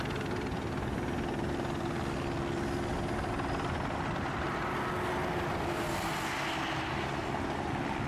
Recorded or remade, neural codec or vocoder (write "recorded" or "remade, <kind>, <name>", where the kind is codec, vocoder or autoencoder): recorded